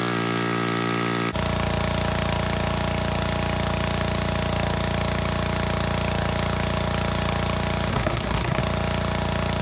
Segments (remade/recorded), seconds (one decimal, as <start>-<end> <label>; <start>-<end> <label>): 0.0-7.9 recorded; 7.9-8.6 remade; 8.6-9.6 recorded